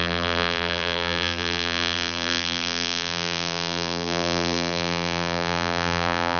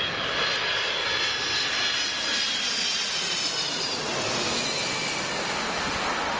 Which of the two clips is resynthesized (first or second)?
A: first